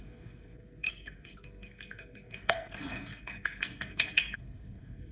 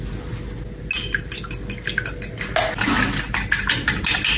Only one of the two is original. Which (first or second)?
second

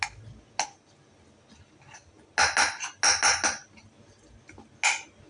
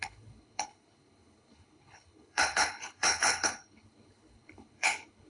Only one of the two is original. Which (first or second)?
first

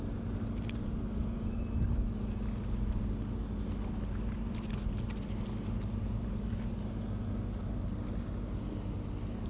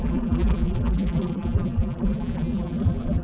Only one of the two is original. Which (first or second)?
first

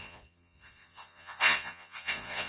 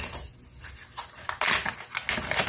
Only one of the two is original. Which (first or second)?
second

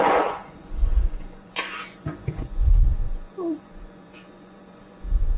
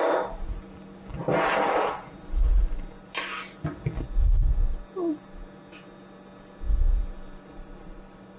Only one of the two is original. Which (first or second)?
second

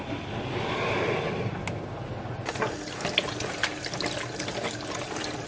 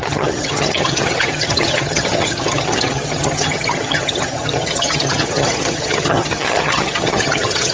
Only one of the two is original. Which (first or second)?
first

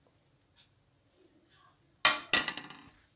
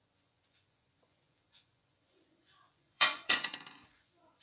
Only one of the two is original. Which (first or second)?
first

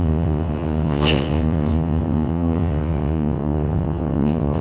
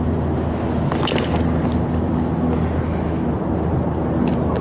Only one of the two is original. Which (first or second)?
second